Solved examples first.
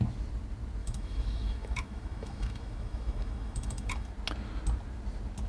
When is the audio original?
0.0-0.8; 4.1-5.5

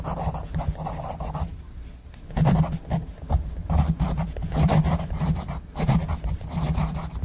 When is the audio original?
0.0-3.6; 5.4-7.2

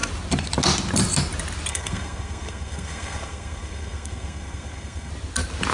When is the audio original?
0.0-1.7; 5.1-5.7

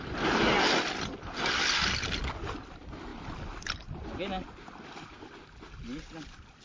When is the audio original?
0.0-6.6

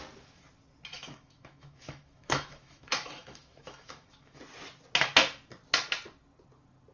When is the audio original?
0.0-0.9; 4.4-6.9

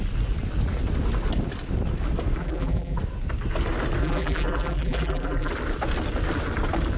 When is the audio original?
0.0-2.4; 3.0-4.0; 5.5-7.0

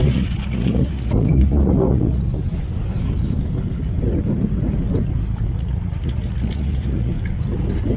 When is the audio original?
2.3-5.5; 7.1-8.0

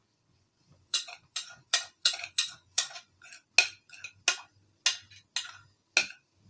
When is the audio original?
3.3-6.5